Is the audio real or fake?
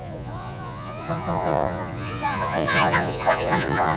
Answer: fake